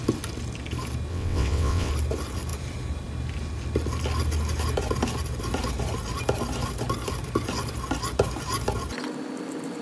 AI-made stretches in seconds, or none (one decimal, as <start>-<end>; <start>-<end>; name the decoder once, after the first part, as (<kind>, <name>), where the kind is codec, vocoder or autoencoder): 1.1-1.9 (vocoder, WaveNeXt)